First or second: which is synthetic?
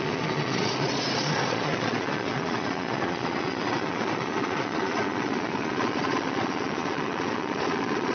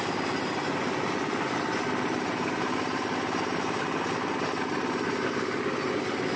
first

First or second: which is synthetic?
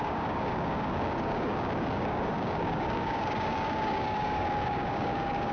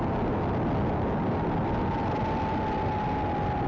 first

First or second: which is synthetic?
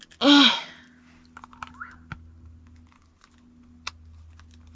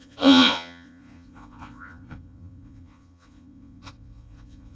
second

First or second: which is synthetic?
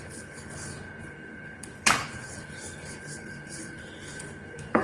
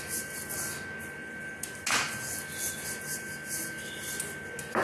first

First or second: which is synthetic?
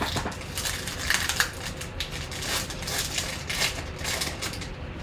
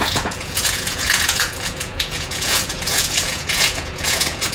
second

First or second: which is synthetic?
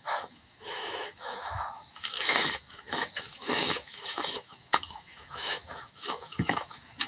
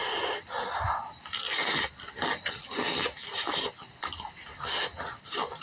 first